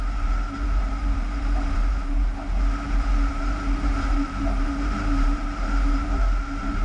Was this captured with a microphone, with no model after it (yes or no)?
no